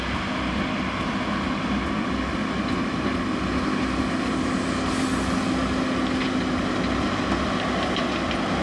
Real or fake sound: real